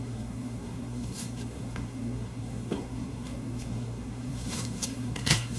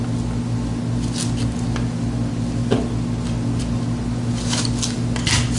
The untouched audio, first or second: second